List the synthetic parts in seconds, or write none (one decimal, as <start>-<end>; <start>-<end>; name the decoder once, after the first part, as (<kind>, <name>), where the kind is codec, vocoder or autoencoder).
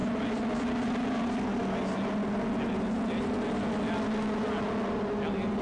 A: none